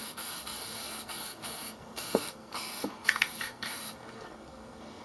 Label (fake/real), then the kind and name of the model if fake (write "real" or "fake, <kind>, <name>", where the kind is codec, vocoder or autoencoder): fake, codec, SNAC